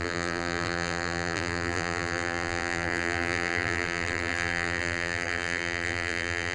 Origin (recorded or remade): remade